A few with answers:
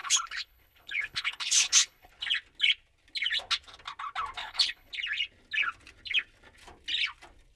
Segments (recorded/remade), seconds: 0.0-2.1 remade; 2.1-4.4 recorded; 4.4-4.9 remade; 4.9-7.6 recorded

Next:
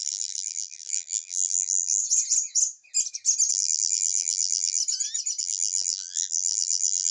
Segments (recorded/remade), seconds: 0.0-2.0 remade; 2.0-3.5 recorded; 3.5-4.8 remade; 4.8-5.4 recorded; 5.4-7.1 remade

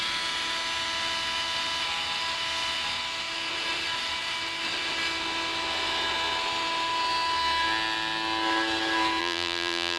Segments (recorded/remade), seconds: 0.0-9.2 recorded; 9.2-10.0 remade

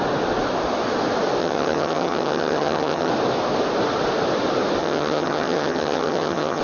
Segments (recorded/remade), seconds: 0.0-1.4 recorded; 1.4-3.1 remade; 3.1-4.8 recorded; 4.8-6.6 remade

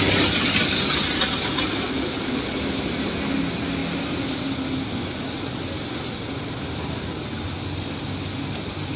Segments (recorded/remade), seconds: 0.0-9.0 recorded

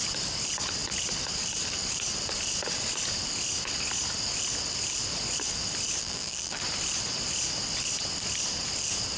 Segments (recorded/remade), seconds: 0.0-6.0 recorded; 6.0-6.6 remade; 6.6-9.2 recorded